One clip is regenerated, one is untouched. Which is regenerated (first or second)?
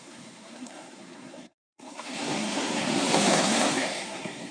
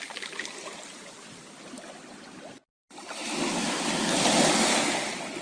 first